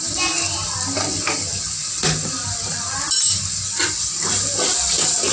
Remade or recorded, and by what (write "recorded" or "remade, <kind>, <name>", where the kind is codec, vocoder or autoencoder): recorded